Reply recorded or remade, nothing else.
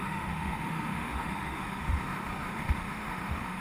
remade